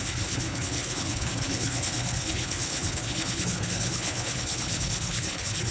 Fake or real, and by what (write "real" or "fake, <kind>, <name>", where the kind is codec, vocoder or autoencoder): fake, codec, HILCodec